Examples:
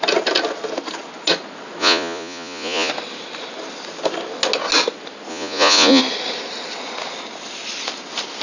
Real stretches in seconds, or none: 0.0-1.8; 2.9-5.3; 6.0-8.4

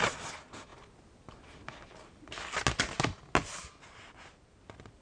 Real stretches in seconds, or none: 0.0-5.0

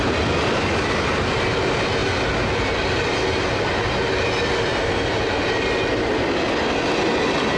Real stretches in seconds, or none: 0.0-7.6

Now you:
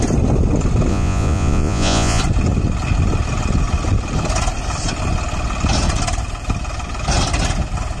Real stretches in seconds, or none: 0.0-0.9; 2.2-8.0

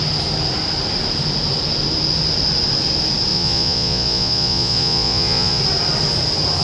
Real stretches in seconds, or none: 0.0-3.3; 5.6-6.6

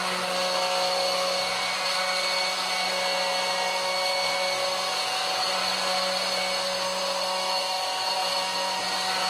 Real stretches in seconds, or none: 0.0-9.3

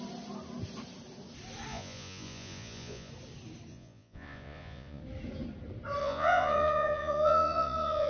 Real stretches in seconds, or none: 0.0-1.7; 3.1-3.7; 5.0-6.0